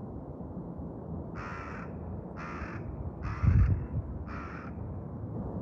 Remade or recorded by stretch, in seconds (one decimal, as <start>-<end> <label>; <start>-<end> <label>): 0.0-3.3 recorded; 3.3-4.7 remade; 4.7-5.6 recorded